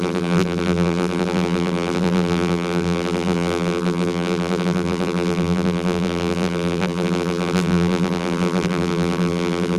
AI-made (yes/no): yes